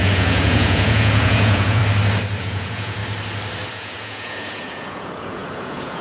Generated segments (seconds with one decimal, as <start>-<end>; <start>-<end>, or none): 0.0-1.8; 2.4-3.0; 3.7-6.0